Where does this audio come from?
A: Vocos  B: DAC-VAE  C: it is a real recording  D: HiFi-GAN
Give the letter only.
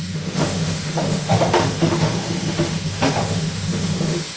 B